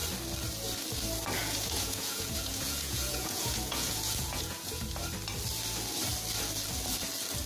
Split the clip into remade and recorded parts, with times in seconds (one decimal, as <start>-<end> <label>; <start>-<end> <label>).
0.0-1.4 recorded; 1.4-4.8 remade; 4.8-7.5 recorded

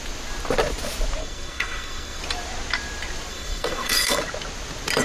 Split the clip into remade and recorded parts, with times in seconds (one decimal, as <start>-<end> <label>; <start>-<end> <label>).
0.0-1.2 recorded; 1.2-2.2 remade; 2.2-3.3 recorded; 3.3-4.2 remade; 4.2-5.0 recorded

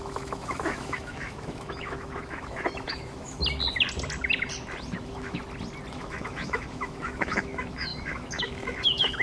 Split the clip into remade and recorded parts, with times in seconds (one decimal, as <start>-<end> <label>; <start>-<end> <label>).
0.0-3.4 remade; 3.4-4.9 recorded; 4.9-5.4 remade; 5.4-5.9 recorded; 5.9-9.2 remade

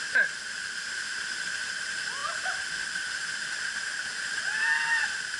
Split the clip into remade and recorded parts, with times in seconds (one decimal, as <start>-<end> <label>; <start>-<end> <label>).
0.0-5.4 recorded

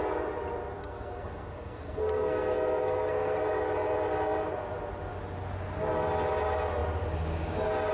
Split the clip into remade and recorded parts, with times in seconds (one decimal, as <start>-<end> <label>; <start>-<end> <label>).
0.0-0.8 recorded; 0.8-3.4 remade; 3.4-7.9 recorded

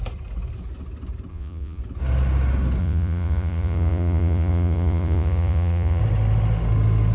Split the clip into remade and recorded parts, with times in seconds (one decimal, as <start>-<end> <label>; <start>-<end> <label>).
0.0-1.3 recorded; 1.3-1.8 remade; 1.8-2.8 recorded; 2.8-6.0 remade; 6.0-7.1 recorded